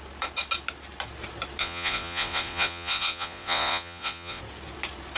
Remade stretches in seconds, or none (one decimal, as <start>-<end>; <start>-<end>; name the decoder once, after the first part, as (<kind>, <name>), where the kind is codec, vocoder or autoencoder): 1.6-4.4 (vocoder, Vocos)